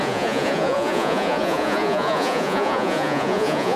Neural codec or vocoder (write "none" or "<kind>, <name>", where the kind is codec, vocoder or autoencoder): vocoder, Vocos